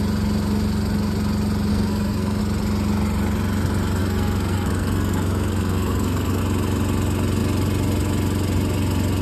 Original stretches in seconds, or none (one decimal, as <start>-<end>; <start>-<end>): 0.0-1.7; 2.4-4.0; 6.4-9.2